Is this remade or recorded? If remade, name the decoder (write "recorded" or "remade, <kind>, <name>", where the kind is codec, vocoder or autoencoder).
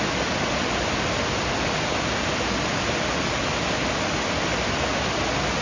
recorded